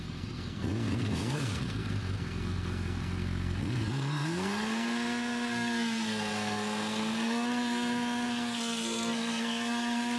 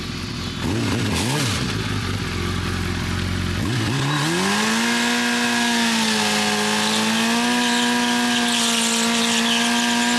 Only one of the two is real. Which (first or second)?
second